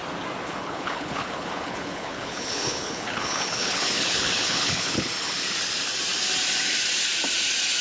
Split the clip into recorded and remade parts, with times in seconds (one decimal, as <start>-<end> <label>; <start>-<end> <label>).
0.0-0.4 recorded; 0.4-5.1 remade; 5.1-7.8 recorded